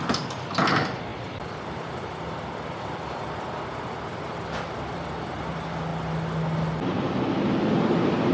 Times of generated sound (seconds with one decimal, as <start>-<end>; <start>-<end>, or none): 0.0-5.9; 7.0-8.3